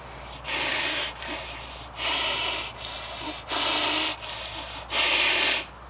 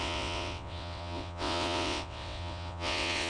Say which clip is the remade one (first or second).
second